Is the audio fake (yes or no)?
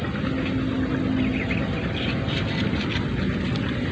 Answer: no